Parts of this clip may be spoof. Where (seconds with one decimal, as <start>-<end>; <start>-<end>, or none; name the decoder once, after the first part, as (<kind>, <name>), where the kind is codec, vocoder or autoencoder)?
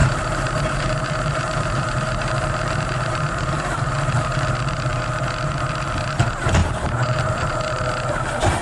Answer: 0.0-3.9 (vocoder, BigVGAN v2); 6.6-7.8